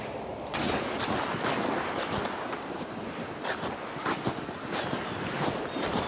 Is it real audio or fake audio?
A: real